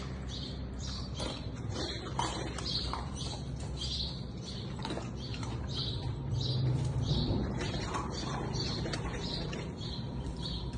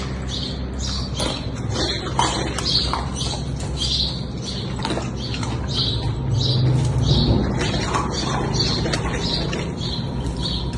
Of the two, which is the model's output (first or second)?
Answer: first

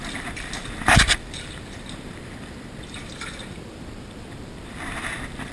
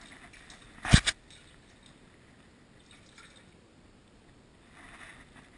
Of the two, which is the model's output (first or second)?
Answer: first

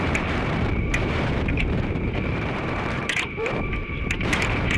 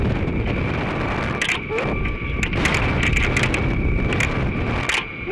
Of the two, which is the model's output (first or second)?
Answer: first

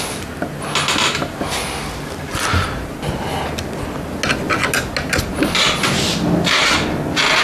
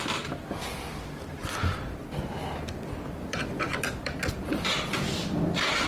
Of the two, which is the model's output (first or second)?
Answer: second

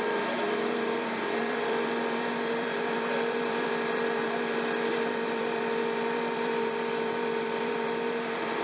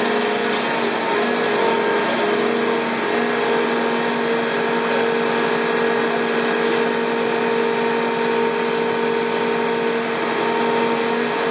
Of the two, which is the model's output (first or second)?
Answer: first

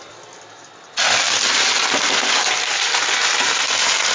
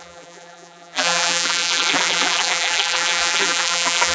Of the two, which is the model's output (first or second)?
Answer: second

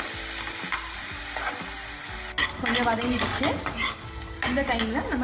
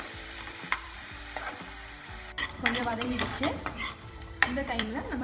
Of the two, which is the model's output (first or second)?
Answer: second